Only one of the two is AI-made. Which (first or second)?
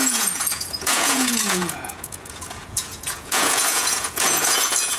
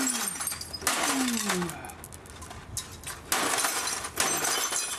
first